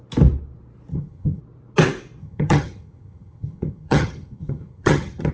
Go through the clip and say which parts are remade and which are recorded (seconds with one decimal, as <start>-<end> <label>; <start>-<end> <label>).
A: 0.0-0.9 recorded; 0.9-1.4 remade; 1.4-2.2 recorded; 2.2-5.3 remade